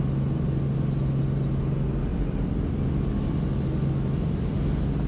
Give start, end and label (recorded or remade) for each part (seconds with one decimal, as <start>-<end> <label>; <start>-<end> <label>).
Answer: 0.0-2.1 recorded; 2.1-3.1 remade; 3.1-5.1 recorded